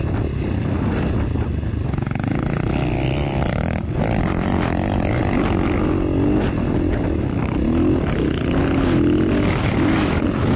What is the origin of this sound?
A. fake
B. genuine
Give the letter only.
B